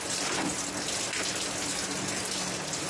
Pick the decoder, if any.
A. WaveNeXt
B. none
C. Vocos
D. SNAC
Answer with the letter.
B